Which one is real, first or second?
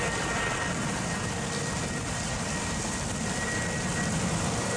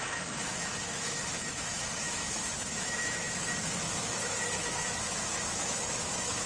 first